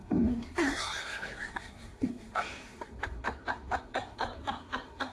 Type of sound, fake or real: fake